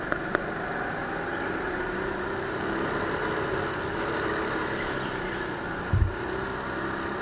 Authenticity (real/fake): real